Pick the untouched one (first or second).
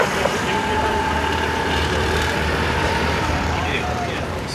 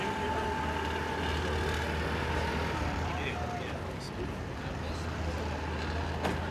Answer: second